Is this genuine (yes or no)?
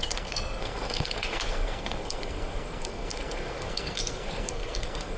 no